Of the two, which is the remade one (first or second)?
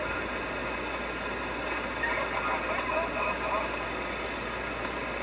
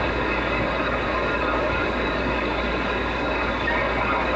second